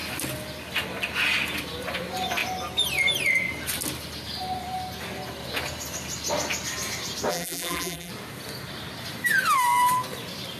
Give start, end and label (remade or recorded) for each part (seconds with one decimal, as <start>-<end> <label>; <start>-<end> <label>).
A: 0.0-7.3 recorded; 7.3-8.1 remade; 8.1-10.6 recorded